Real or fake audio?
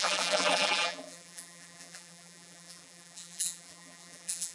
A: fake